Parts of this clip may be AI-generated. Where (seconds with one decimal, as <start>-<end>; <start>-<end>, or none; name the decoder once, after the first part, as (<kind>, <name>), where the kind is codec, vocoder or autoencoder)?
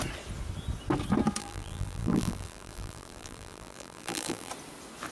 1.4-4.5 (vocoder, BigVGAN v2)